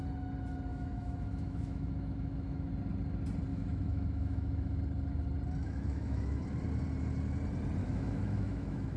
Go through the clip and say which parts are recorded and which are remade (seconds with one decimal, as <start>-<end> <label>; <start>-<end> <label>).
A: 0.0-0.7 recorded; 0.7-2.7 remade; 2.7-3.5 recorded; 3.5-4.8 remade; 4.8-5.6 recorded; 5.6-6.4 remade; 6.4-7.8 recorded; 7.8-9.0 remade